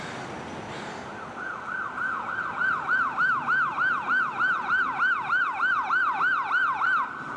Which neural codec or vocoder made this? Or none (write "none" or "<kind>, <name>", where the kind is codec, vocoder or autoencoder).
vocoder, BigVGAN v2